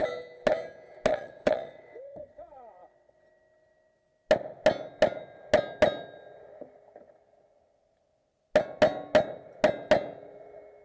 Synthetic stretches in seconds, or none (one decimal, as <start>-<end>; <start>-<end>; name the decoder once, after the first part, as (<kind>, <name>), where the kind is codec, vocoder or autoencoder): 1.1-3.2 (vocoder, WaveNeXt)